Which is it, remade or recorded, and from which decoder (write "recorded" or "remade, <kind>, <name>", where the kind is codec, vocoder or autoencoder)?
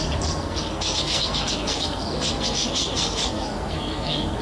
remade, codec, SNAC